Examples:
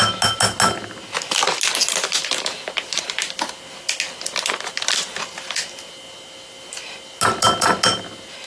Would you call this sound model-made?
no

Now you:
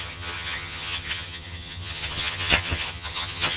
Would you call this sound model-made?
yes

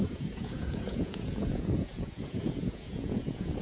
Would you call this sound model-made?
yes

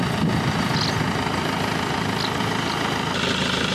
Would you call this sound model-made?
no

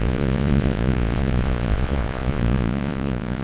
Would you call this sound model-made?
yes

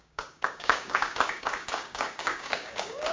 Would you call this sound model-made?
yes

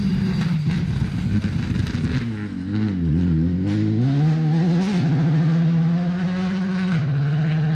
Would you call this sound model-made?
no